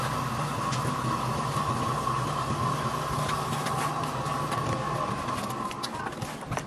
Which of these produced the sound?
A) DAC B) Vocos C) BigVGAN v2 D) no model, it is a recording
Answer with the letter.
D